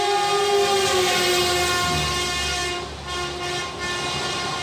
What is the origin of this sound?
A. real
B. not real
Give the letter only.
A